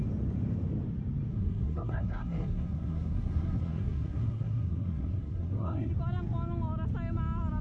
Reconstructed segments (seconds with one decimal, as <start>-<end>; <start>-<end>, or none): 1.3-5.9

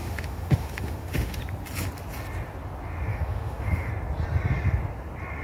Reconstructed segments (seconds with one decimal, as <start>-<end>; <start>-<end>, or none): 0.0-1.4; 3.1-3.9